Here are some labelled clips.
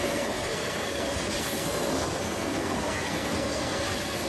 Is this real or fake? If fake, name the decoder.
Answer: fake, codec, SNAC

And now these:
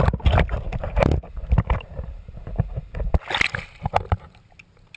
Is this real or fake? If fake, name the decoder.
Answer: real